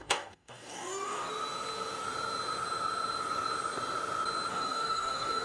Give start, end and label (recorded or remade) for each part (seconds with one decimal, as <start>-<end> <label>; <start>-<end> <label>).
0.0-1.3 remade; 1.3-4.5 recorded; 4.5-5.4 remade